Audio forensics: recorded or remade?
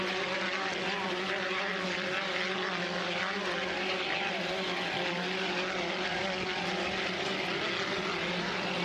recorded